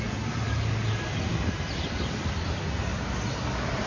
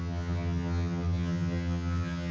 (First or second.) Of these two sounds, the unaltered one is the first